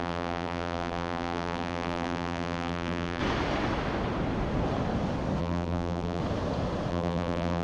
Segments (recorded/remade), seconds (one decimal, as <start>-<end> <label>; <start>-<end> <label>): 0.0-3.2 remade; 3.2-5.4 recorded; 5.4-6.2 remade; 6.2-6.9 recorded; 6.9-7.6 remade